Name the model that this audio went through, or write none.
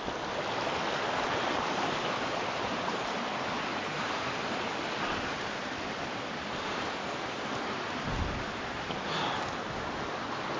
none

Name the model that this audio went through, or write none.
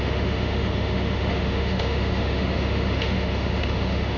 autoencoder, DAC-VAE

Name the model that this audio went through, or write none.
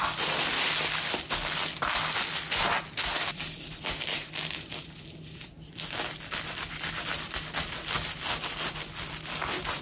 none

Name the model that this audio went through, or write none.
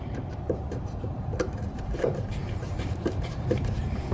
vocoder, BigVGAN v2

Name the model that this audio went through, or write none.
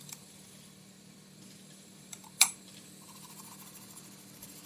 vocoder, BigVGAN v2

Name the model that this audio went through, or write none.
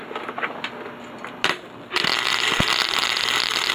none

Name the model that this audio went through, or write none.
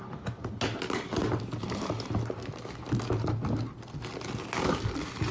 none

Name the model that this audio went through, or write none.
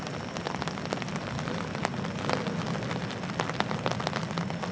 none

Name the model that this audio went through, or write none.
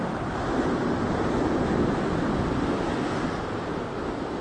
none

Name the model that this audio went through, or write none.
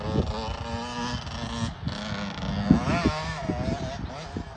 none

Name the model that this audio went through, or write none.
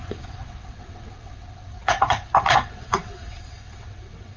vocoder, WaveNeXt